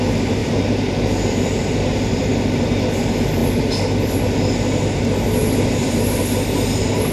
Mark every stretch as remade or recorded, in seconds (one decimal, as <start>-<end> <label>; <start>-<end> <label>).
0.0-0.4 recorded; 0.4-2.2 remade; 2.2-7.1 recorded